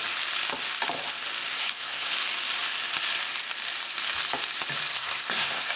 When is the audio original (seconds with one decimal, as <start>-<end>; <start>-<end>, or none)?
0.0-1.5; 2.1-4.9